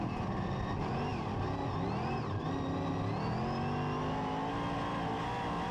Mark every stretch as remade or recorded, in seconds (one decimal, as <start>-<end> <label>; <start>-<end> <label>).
0.0-5.7 recorded